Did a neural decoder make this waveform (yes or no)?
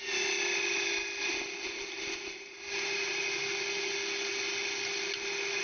no